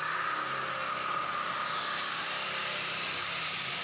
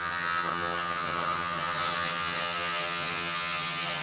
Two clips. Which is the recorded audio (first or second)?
first